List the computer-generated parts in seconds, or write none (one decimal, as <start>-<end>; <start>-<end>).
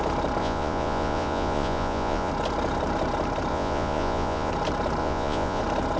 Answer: 0.4-2.3; 3.5-4.5; 5.0-5.6